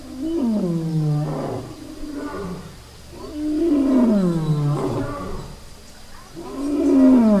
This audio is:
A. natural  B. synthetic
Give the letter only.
A